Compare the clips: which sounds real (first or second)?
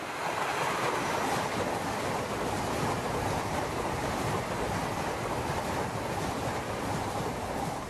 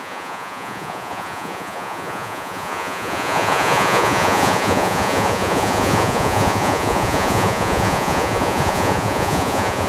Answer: first